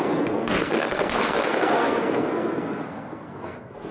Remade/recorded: remade